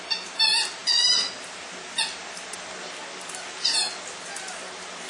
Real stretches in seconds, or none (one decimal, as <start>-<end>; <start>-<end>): 0.0-5.1